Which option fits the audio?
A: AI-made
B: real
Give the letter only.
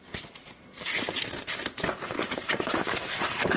A